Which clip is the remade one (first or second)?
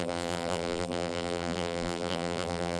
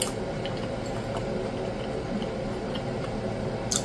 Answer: first